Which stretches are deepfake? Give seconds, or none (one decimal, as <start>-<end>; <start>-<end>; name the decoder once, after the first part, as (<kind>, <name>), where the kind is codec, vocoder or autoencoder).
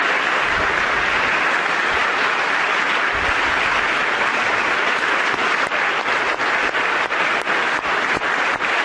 none